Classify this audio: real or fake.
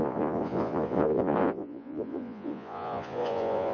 fake